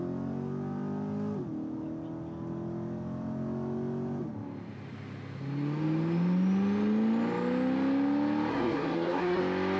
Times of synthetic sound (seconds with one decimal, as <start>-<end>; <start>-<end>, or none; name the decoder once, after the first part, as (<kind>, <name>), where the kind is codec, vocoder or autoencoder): 8.5-9.4 (codec, SNAC)